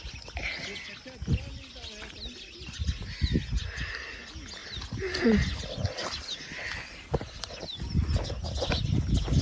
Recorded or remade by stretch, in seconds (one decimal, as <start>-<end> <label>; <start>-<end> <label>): 0.0-9.4 recorded